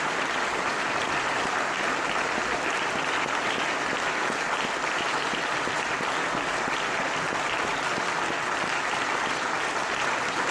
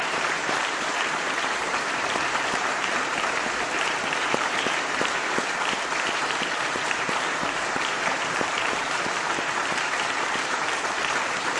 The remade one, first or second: second